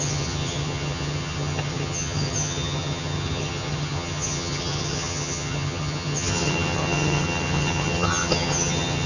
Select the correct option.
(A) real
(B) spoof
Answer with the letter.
B